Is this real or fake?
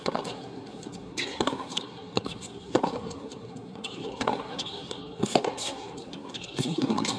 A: fake